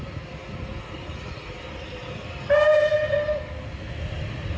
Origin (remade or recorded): recorded